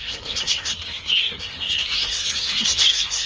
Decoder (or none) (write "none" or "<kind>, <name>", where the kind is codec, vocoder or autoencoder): codec, SNAC